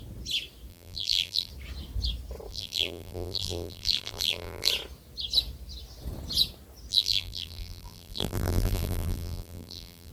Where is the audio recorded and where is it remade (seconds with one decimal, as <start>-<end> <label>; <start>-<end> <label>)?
0.0-0.7 recorded; 0.7-1.5 remade; 1.5-2.5 recorded; 2.5-4.7 remade; 4.7-6.9 recorded; 6.9-10.1 remade